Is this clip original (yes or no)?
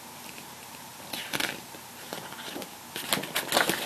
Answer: yes